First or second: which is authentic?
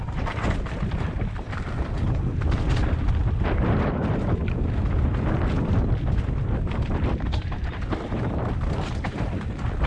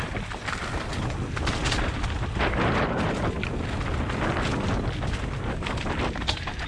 second